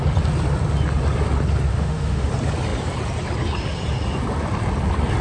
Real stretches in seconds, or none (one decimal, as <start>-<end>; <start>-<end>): 0.0-1.7; 2.3-5.2